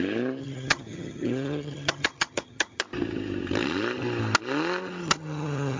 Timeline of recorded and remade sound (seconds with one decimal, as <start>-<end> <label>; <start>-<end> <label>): 0.0-0.4 recorded; 0.4-2.8 remade; 2.8-5.0 recorded; 5.0-5.8 remade